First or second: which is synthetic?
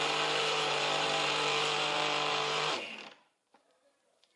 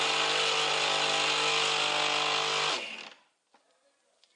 first